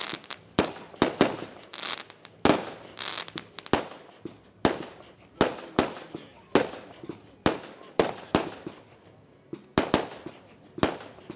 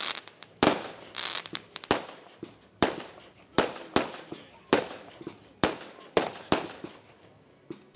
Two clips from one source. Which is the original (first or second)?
first